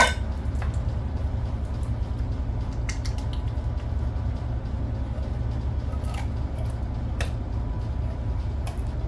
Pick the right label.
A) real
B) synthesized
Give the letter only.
A